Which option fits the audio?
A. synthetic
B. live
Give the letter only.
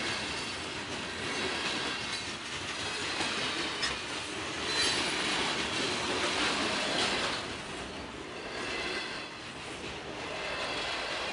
B